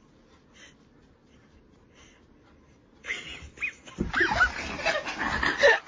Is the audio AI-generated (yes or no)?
no